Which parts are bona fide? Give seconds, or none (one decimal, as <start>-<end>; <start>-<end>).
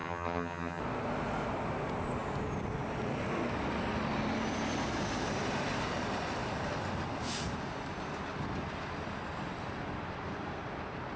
0.8-11.2